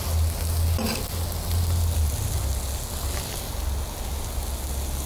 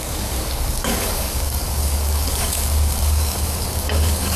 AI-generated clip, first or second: second